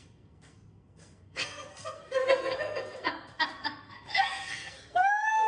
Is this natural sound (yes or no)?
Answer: no